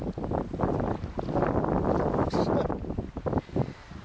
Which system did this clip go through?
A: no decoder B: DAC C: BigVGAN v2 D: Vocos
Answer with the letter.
A